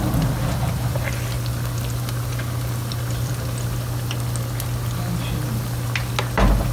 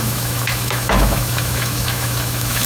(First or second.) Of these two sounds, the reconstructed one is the second